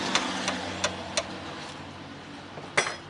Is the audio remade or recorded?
recorded